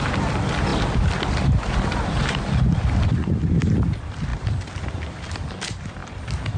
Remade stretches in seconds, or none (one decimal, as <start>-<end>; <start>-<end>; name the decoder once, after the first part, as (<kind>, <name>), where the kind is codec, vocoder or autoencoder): none